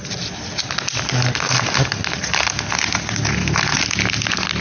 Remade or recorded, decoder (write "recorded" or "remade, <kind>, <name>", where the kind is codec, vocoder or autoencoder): recorded